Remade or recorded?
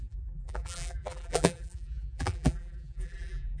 remade